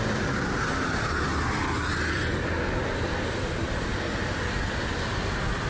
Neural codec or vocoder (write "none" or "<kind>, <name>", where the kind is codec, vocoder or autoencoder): none